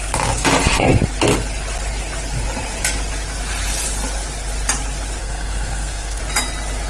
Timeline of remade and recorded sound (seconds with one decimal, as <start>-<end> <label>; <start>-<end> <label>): 0.0-5.2 recorded; 5.2-6.2 remade; 6.2-6.9 recorded